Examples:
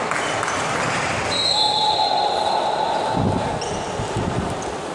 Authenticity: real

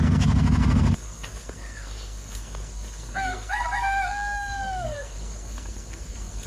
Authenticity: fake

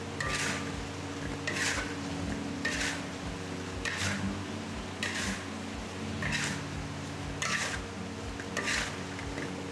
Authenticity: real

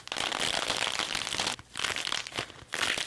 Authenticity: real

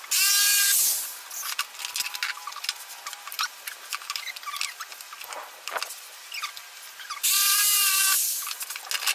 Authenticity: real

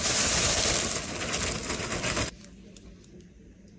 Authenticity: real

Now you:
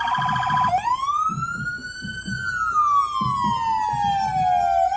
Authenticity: real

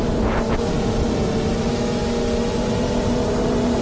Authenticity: fake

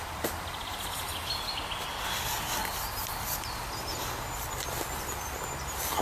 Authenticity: real